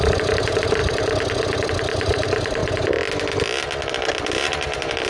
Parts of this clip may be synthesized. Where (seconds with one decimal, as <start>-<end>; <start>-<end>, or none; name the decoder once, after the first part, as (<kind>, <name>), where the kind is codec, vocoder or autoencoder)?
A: 0.0-0.8 (vocoder, BigVGAN v2); 1.9-2.6; 3.9-5.1